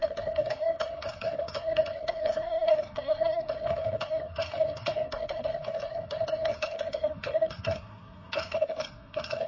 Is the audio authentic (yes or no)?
no